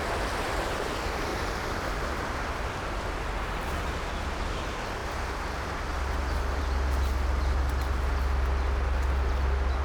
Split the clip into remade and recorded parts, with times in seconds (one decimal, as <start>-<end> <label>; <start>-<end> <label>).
0.0-9.8 recorded